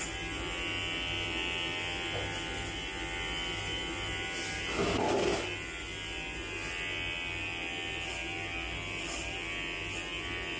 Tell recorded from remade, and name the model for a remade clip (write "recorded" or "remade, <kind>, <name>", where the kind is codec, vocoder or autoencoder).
recorded